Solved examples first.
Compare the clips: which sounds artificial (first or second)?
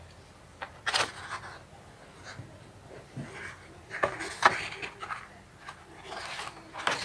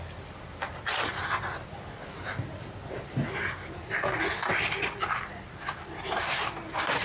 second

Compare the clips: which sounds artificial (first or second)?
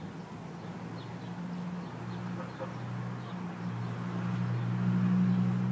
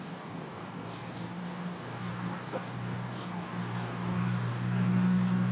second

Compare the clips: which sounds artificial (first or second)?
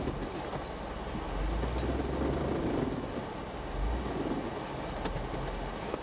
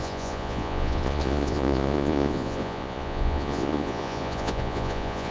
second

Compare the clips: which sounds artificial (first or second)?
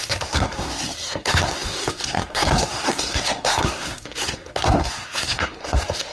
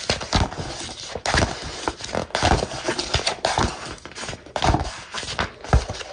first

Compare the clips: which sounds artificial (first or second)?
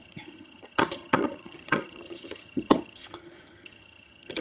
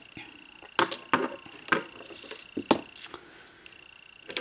first